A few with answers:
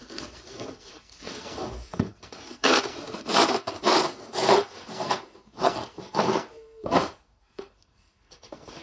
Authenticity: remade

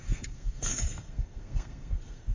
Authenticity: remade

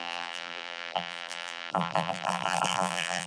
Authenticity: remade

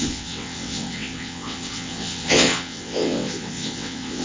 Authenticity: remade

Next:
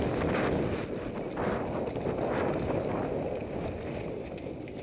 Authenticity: recorded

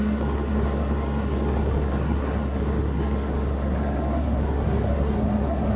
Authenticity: remade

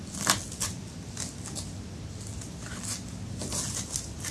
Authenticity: recorded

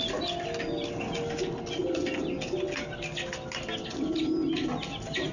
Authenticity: recorded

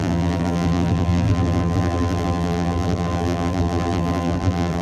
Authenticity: remade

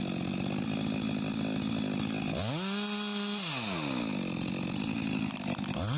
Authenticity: recorded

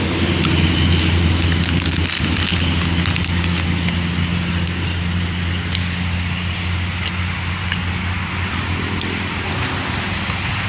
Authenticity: recorded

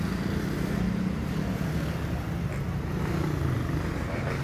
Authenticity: recorded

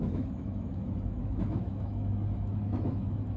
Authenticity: remade